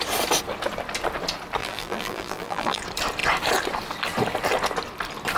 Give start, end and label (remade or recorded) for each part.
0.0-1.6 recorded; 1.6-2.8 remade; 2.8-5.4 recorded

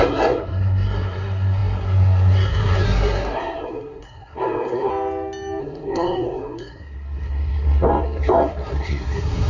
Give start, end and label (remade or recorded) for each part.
0.0-4.9 remade; 4.9-5.6 recorded; 5.6-9.5 remade

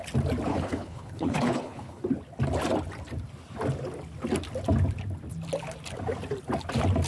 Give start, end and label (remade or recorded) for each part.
0.0-0.5 recorded; 0.5-2.0 remade; 2.0-7.1 recorded